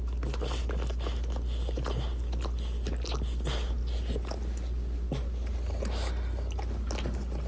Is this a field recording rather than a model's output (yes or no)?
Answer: yes